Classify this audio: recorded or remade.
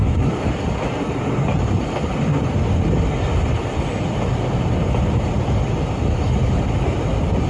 recorded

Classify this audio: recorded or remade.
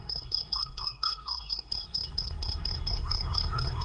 remade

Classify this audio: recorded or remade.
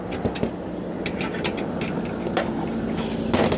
recorded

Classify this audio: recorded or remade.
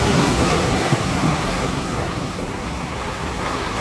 remade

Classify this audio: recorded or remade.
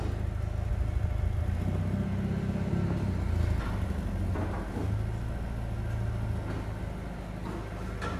recorded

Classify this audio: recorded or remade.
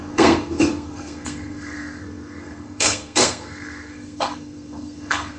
remade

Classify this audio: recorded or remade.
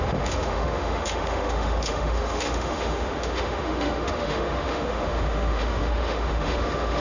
remade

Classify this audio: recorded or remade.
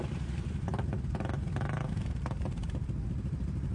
remade